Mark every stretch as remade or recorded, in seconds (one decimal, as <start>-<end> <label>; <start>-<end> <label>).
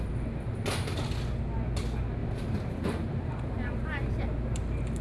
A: 0.0-2.2 recorded; 2.2-4.0 remade; 4.0-5.0 recorded